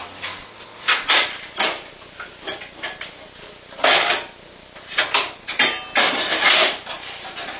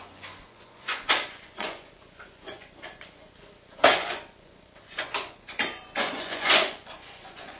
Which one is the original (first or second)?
first